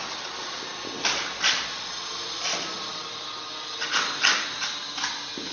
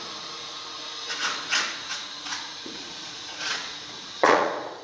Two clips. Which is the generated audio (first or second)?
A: second